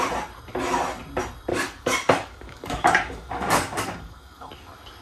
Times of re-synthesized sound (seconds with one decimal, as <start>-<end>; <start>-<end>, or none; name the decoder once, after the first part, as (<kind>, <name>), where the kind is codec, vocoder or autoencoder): 1.5-4.5 (codec, DAC)